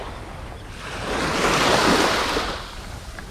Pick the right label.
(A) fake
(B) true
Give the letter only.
B